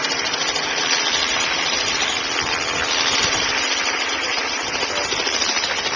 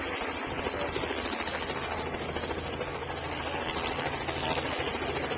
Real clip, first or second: second